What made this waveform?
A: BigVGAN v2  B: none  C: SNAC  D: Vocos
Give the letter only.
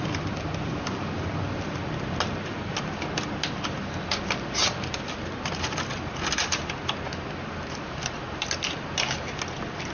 B